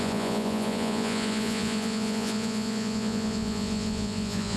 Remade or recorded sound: remade